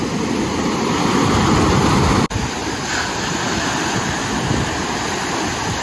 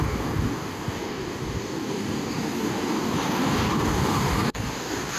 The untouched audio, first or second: first